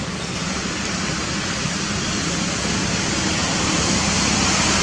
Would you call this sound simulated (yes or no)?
no